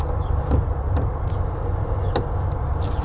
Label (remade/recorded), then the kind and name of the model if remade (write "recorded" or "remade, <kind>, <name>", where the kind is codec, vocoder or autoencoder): recorded